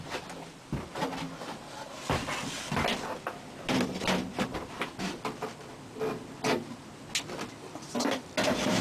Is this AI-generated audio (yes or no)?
no